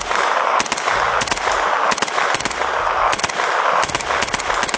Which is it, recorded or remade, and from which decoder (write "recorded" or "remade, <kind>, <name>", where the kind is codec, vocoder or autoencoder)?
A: recorded